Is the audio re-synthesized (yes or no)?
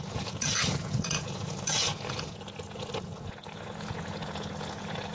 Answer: yes